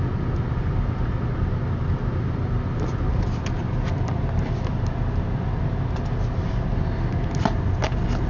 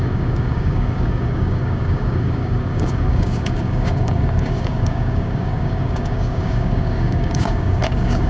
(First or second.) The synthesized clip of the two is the second